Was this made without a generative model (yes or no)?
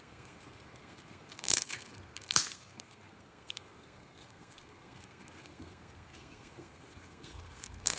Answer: no